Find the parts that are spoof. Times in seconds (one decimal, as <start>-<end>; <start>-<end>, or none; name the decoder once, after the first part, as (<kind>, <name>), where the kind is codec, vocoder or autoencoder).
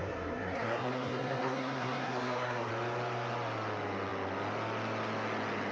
0.0-2.7 (codec, SNAC)